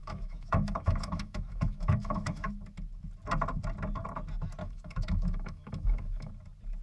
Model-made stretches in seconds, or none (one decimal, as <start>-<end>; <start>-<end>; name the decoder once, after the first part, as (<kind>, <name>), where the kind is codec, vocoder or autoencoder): 0.0-2.5 (autoencoder, DAC-VAE); 4.6-6.3